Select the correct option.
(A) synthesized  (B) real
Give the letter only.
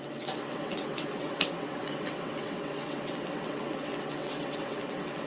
A